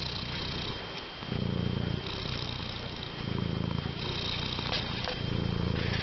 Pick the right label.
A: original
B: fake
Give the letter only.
A